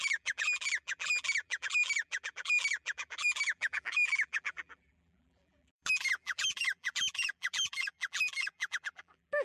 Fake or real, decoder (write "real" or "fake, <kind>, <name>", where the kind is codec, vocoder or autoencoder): fake, vocoder, BigVGAN v2